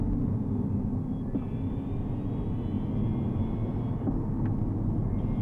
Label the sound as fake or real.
real